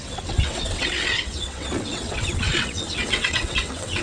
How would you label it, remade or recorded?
remade